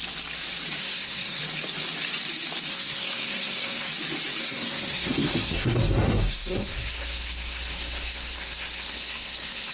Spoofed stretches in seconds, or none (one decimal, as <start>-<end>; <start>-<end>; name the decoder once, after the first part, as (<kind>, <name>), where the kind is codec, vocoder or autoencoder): 0.8-1.4 (codec, SNAC); 2.7-3.9; 4.4-9.7